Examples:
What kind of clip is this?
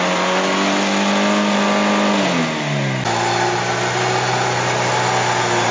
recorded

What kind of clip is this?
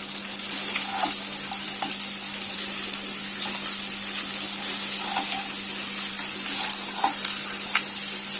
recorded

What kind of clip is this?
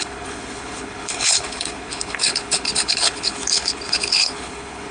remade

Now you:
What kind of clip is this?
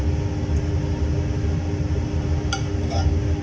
recorded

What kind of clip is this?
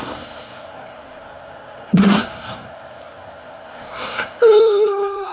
remade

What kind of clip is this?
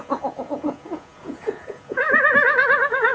remade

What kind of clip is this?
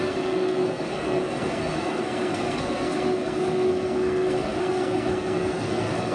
remade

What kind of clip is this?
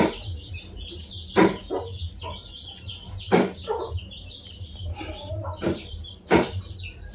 remade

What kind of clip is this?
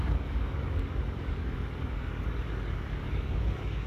remade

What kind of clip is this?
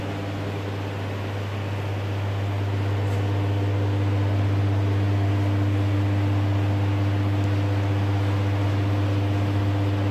recorded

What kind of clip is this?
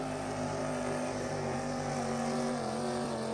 remade